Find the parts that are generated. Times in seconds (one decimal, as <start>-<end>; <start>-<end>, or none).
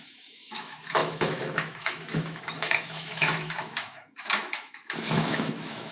0.0-5.9